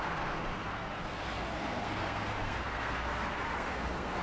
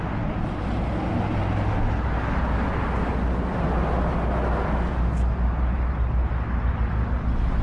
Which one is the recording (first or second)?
second